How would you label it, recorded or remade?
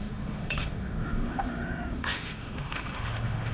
remade